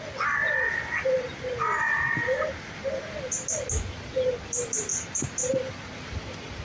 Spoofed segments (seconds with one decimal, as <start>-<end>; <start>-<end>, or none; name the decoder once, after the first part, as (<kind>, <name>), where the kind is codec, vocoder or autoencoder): none